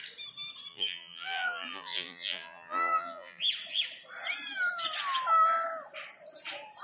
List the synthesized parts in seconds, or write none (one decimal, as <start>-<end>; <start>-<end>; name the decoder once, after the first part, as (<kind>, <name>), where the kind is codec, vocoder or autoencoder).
0.7-3.4 (vocoder, BigVGAN v2)